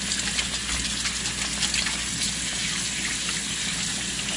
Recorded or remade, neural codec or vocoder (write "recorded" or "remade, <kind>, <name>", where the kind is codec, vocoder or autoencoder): recorded